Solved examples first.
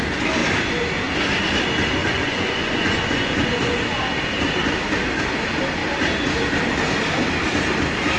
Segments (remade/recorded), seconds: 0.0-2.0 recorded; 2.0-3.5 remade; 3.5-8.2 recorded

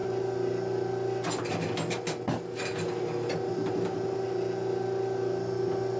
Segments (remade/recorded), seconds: 0.0-6.0 recorded

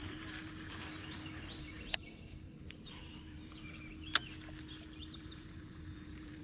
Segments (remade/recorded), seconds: 0.0-3.8 remade; 3.8-5.0 recorded; 5.0-6.4 remade

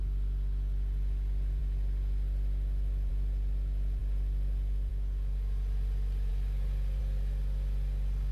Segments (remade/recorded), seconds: 0.0-8.3 recorded